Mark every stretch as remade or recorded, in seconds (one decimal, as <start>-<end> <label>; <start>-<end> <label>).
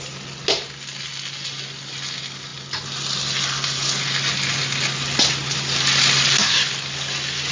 0.0-7.5 recorded